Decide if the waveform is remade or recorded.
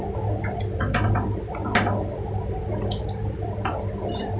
recorded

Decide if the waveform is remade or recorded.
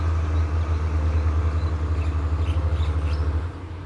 recorded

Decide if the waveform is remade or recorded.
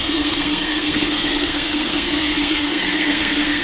remade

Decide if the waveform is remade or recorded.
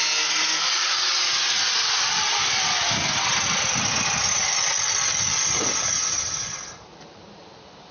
recorded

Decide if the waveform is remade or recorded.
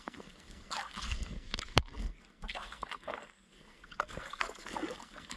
remade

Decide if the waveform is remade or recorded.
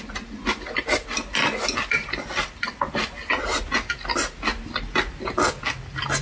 recorded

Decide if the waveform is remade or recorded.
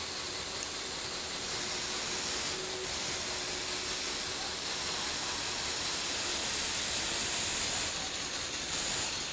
recorded